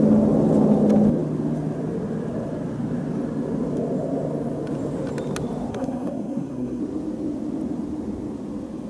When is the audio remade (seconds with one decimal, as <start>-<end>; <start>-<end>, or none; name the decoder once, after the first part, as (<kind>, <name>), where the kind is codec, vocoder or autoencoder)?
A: 5.7-6.8 (codec, SNAC)